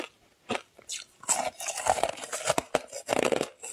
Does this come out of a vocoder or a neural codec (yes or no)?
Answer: no